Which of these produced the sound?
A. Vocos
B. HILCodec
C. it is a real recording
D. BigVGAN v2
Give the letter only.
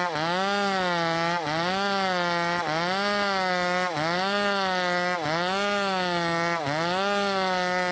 C